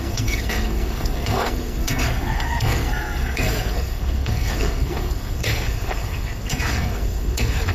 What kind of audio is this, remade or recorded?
remade